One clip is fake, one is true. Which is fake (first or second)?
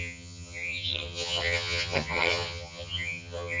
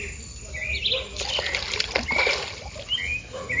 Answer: first